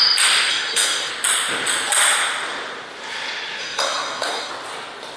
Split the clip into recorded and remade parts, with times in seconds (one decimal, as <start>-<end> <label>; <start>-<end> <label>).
0.0-0.5 recorded; 0.5-1.1 remade; 1.1-3.6 recorded; 3.6-4.5 remade; 4.5-5.2 recorded